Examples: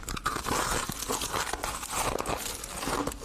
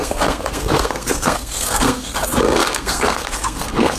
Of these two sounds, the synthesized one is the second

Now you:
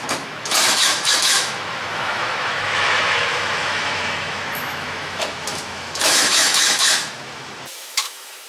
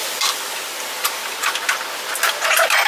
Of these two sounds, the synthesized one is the first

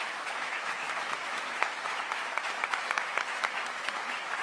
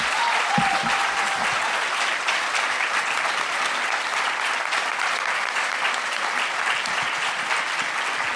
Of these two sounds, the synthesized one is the first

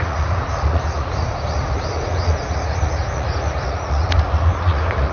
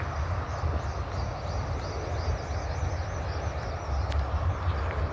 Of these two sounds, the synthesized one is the first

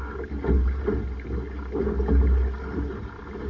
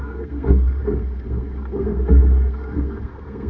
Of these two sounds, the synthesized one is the second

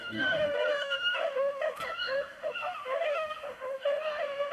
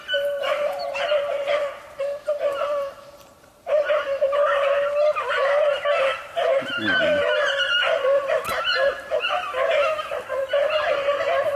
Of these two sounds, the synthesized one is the first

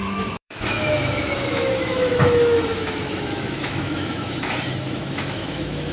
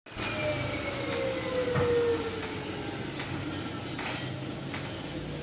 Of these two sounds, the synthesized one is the first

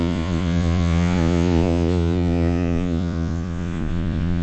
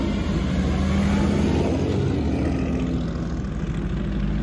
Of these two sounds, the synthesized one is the first